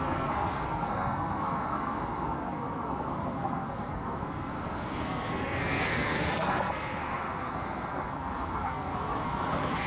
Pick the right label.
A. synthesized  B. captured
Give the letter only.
A